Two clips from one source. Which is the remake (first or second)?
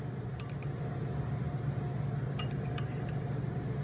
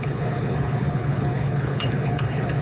second